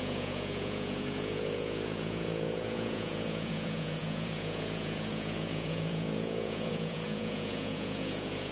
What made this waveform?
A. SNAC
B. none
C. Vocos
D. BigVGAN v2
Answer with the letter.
C